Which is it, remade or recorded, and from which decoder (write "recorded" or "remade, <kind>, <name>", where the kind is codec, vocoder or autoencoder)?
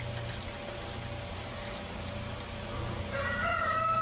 recorded